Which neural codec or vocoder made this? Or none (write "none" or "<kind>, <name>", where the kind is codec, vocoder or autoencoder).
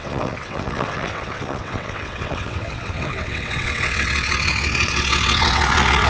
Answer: vocoder, WaveNeXt